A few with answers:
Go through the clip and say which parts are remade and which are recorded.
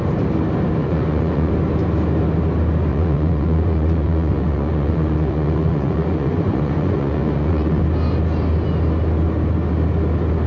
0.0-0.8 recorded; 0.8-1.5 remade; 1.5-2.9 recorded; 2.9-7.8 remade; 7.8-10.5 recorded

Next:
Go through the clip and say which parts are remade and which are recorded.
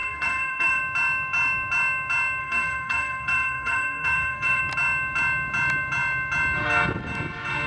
0.0-0.8 remade; 0.8-2.4 recorded; 2.4-4.6 remade; 4.6-7.7 recorded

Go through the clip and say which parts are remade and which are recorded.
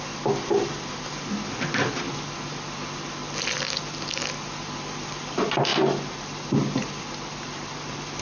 0.0-8.2 recorded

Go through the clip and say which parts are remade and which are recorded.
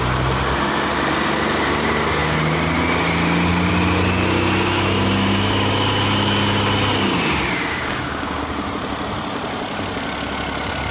0.0-7.7 recorded; 7.7-8.4 remade; 8.4-10.9 recorded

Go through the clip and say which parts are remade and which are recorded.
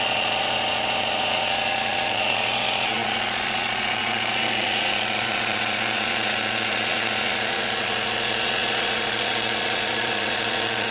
0.0-10.9 remade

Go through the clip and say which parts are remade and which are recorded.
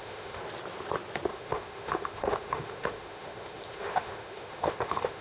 0.0-0.4 remade; 0.4-1.3 recorded; 1.3-5.2 remade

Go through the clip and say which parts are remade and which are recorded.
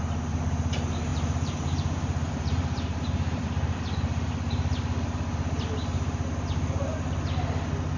0.0-1.1 recorded; 1.1-3.8 remade; 3.8-8.0 recorded